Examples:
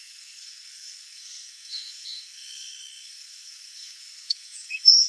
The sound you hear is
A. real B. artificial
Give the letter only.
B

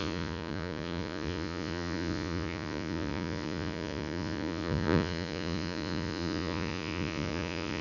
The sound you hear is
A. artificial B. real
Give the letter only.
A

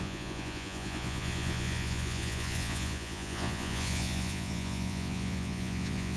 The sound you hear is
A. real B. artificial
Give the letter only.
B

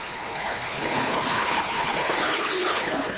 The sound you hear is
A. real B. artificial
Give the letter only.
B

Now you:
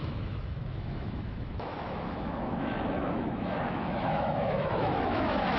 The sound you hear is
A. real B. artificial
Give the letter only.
B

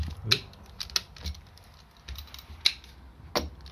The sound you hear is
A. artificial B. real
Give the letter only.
B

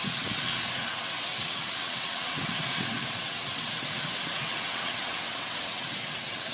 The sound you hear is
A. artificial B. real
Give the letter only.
A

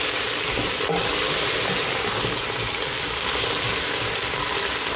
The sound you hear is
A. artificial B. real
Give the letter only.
B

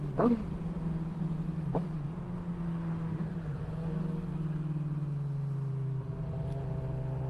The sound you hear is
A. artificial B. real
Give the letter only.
B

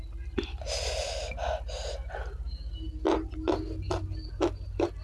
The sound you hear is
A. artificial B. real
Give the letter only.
B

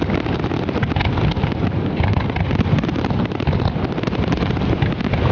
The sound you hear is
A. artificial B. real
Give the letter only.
B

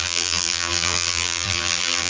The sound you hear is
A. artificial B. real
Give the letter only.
A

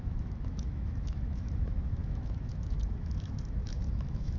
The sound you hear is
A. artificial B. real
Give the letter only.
A